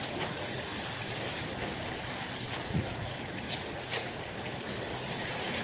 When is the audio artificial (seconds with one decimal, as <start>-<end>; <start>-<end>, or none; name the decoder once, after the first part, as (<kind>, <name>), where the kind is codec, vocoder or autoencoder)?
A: 0.0-0.7 (vocoder, Vocos); 2.5-4.1; 4.9-5.6